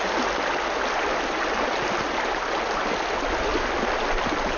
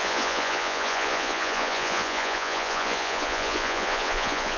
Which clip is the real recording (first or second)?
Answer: first